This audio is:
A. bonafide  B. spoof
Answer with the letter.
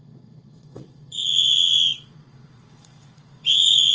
B